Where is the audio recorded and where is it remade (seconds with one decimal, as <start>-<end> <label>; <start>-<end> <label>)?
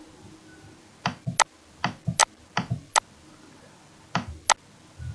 0.0-5.1 recorded